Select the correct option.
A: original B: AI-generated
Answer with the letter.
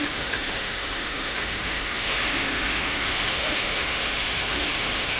B